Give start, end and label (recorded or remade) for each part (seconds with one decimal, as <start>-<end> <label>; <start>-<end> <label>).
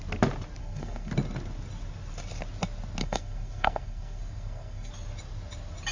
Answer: 0.0-0.6 recorded; 0.6-1.1 remade; 1.1-3.0 recorded; 3.0-4.9 remade; 4.9-5.9 recorded